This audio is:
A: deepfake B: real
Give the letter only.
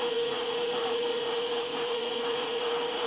A